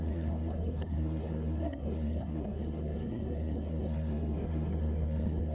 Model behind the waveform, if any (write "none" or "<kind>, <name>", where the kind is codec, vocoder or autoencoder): codec, SNAC